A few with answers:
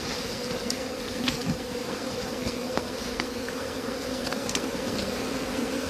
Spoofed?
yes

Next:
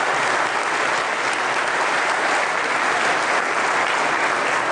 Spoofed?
no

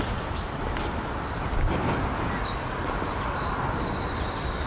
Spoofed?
no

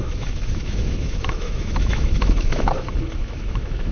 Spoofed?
yes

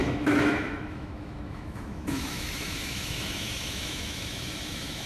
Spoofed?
yes